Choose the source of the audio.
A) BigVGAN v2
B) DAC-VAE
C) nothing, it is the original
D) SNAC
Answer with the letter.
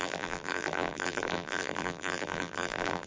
A